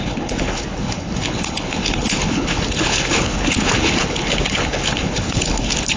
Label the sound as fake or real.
fake